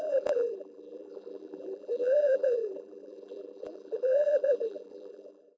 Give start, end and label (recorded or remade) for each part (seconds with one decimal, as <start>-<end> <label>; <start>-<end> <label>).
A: 0.0-5.6 remade